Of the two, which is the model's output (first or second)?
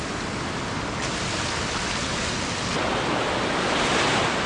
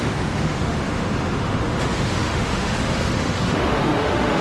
second